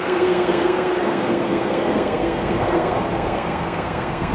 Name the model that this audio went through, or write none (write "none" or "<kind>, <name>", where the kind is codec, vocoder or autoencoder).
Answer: codec, SNAC